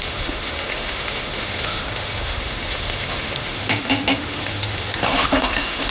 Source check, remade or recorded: remade